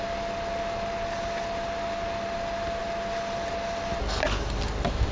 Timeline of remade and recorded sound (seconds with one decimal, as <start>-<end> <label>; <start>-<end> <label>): 0.0-5.1 recorded

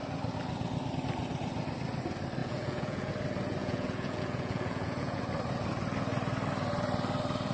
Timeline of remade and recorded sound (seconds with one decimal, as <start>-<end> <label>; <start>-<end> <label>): 0.0-2.4 recorded; 2.4-3.1 remade; 3.1-3.6 recorded; 3.6-5.2 remade; 5.2-7.5 recorded

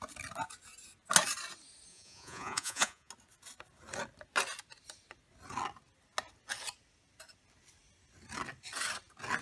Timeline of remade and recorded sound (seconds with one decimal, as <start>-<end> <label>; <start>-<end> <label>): 0.0-1.9 recorded; 1.9-3.1 remade; 3.1-9.4 recorded

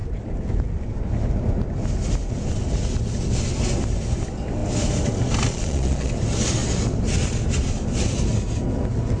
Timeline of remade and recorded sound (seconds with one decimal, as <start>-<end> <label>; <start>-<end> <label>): 0.0-5.5 recorded; 5.5-6.1 remade; 6.1-9.2 recorded

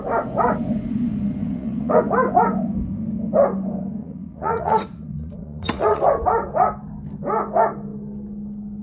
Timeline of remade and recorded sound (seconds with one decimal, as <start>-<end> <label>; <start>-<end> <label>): 0.0-1.4 recorded; 1.4-2.0 remade; 2.0-4.0 recorded; 4.0-6.0 remade; 6.0-8.8 recorded

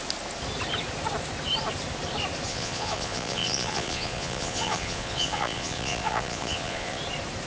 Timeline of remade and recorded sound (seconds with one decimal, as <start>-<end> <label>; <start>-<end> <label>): 0.0-2.5 recorded; 2.5-7.0 remade; 7.0-7.5 recorded